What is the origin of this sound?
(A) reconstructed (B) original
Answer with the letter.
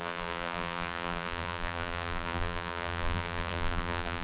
A